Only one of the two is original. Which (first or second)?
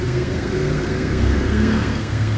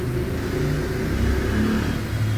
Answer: second